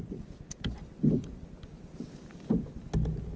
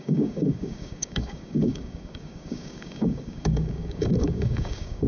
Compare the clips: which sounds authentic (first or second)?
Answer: first